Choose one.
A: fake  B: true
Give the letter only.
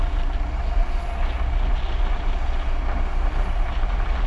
B